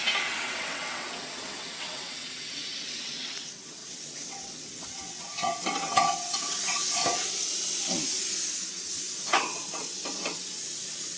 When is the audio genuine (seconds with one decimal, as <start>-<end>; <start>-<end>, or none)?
7.0-8.7

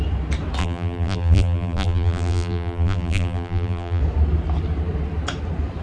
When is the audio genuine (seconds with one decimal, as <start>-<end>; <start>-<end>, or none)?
0.0-0.6; 4.0-5.8

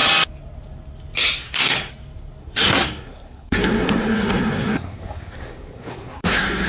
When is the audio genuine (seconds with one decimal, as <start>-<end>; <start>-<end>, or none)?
0.0-1.4; 1.9-2.4